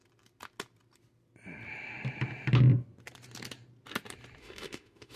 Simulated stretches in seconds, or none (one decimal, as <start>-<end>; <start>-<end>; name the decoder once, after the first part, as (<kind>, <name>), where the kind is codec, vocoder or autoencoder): 4.4-5.2 (autoencoder, DAC-VAE)